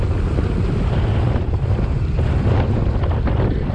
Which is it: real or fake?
real